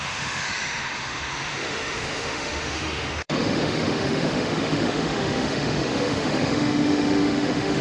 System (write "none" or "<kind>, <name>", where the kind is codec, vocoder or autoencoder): autoencoder, DAC-VAE